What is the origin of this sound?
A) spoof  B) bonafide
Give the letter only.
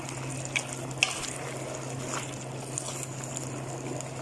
B